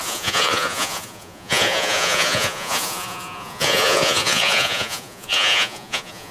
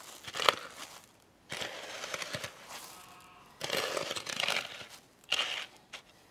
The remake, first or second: first